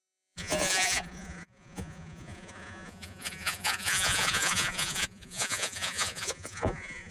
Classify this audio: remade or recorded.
remade